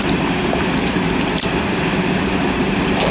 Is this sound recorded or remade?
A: recorded